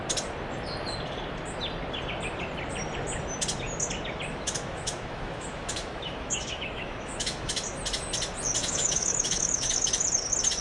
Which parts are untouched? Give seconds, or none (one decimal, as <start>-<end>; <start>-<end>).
0.0-4.3; 7.6-8.6; 9.9-10.6

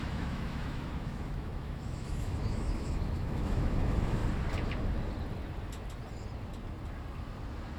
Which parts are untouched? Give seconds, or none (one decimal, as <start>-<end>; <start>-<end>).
4.2-7.8

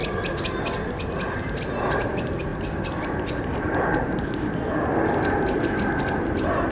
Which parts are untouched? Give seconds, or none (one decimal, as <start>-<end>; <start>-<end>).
0.0-6.7